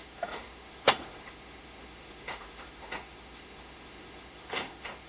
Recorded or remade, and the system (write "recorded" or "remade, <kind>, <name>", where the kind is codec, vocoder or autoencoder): remade, autoencoder, DAC-VAE